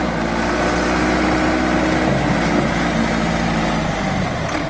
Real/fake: real